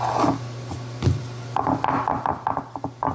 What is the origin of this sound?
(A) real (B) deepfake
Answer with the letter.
A